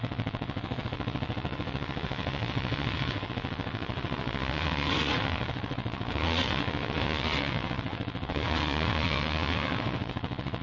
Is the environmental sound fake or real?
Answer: fake